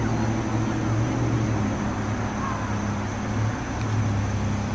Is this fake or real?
real